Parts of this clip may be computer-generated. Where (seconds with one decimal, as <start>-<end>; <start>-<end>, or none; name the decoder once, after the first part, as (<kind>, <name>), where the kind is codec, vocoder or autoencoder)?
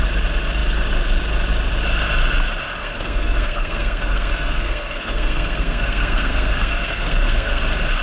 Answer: 2.8-7.6 (codec, SNAC)